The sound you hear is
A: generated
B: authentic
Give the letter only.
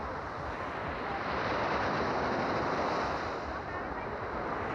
B